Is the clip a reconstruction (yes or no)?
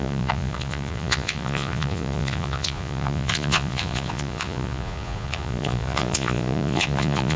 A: yes